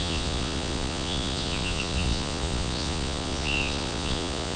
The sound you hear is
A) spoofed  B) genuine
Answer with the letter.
A